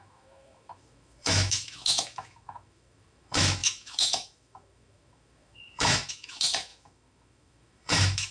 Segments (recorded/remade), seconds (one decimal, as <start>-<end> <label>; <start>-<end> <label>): 0.0-8.3 remade